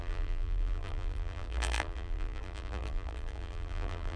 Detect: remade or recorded remade